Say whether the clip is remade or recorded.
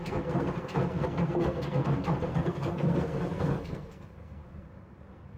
remade